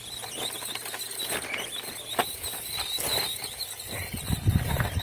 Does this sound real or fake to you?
real